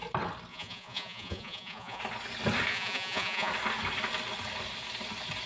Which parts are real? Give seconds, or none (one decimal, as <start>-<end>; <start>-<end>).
0.0-0.5; 2.0-2.7; 3.5-5.5